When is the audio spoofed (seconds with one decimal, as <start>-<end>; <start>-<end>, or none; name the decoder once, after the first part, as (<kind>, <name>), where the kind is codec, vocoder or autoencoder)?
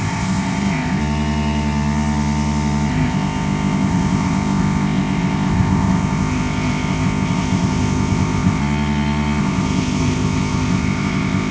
0.0-1.0 (codec, ZipCodec); 2.9-8.6; 9.4-11.5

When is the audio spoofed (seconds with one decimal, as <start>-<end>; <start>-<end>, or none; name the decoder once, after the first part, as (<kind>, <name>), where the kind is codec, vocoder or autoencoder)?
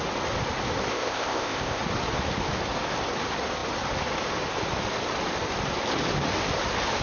0.9-1.8 (codec, ZipCodec)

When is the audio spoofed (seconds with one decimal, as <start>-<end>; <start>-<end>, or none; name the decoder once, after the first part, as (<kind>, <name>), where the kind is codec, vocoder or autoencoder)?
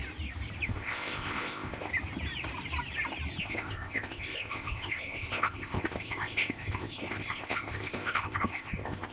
0.7-1.9 (codec, ZipCodec); 3.4-9.1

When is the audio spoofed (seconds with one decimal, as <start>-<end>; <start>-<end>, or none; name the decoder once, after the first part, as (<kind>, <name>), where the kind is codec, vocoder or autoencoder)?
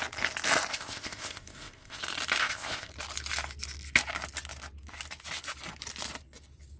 0.7-2.0 (codec, ZipCodec); 2.4-2.9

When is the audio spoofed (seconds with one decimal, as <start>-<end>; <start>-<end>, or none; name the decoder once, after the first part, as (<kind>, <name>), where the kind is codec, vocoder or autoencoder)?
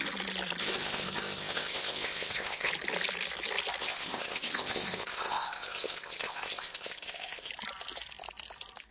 0.6-2.7 (codec, ZipCodec); 3.8-7.5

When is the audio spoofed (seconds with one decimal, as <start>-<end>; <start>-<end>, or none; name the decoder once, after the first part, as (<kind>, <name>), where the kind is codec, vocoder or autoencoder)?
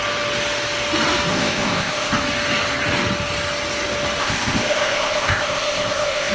1.3-2.1 (codec, ZipCodec); 4.2-6.3